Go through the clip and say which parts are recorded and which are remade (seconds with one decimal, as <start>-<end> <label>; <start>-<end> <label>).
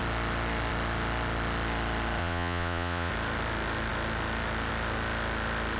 0.0-2.2 recorded; 2.2-3.1 remade; 3.1-5.8 recorded